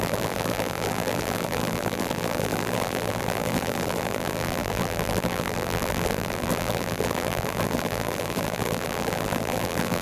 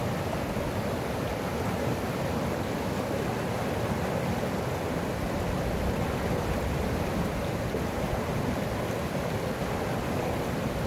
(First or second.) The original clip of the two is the second